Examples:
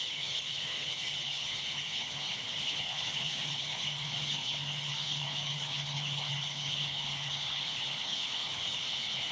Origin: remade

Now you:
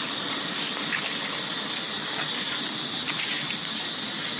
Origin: recorded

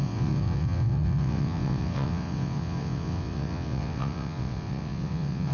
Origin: remade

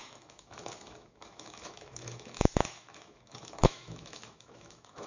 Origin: remade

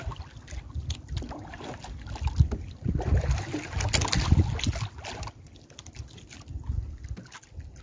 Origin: recorded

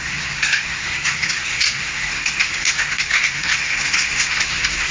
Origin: remade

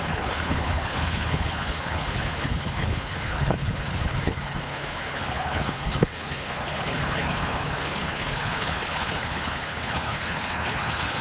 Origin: remade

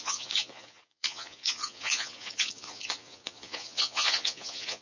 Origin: remade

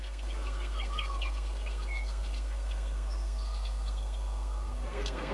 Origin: remade